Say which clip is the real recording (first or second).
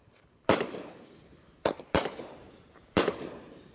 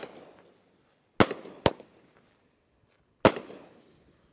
second